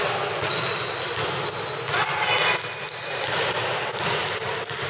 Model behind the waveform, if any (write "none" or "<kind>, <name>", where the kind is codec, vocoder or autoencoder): none